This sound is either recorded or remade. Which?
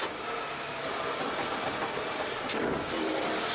remade